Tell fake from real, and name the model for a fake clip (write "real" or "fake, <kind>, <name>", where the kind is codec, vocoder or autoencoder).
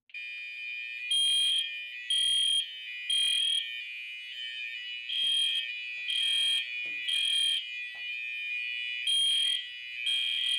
real